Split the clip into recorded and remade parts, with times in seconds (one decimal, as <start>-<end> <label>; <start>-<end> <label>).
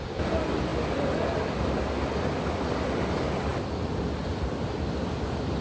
0.0-3.5 remade; 3.5-5.6 recorded